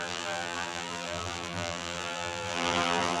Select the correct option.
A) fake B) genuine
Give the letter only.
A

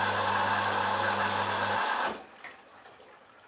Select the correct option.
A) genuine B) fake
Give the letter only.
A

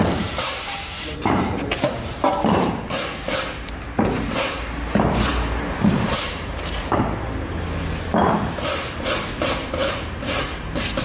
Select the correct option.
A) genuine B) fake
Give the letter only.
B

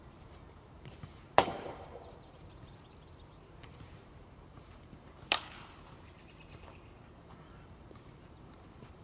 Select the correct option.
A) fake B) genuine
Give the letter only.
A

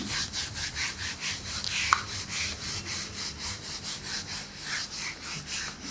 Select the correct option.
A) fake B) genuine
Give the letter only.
B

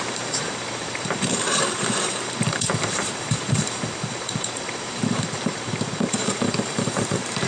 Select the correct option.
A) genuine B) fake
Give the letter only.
B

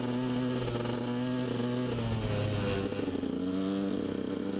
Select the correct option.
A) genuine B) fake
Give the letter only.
A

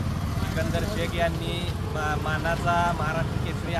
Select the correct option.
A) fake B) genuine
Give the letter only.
B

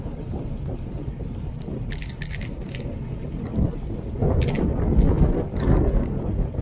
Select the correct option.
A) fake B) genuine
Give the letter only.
B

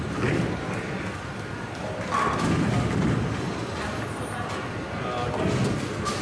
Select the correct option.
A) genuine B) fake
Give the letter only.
A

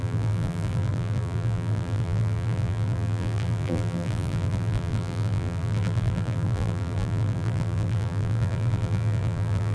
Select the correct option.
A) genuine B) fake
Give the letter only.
B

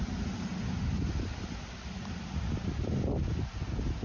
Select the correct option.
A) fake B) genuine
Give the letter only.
B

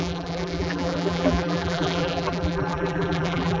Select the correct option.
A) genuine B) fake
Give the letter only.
B